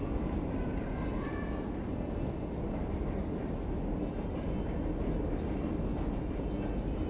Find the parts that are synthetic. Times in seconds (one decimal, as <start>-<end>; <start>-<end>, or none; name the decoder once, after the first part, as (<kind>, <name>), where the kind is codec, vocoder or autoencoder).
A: none